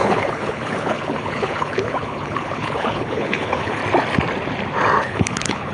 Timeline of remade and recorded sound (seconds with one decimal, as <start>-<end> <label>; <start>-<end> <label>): 0.0-3.8 remade; 3.8-5.0 recorded; 5.0-5.7 remade